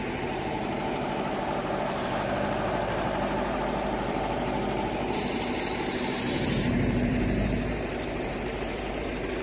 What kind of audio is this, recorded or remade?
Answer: remade